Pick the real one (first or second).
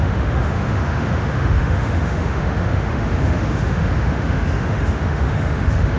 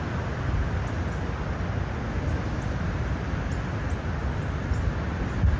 second